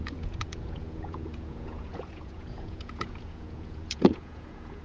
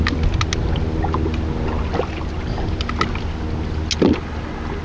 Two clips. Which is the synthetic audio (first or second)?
first